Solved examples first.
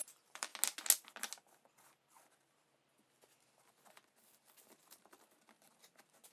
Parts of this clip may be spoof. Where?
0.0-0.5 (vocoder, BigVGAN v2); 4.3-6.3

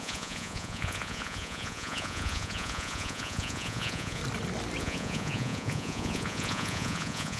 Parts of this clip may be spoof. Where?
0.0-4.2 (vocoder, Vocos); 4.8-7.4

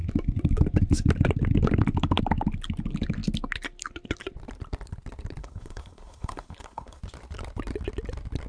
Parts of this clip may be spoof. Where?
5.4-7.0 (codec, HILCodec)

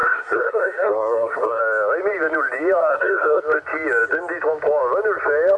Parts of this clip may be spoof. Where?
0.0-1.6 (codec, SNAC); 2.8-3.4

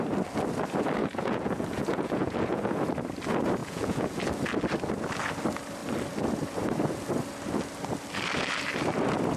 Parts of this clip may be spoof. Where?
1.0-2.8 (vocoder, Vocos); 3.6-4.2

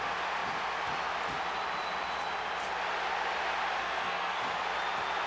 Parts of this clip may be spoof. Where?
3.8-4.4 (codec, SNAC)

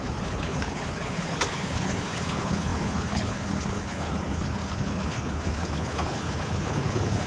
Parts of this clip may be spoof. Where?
0.0-7.3 (codec, HILCodec)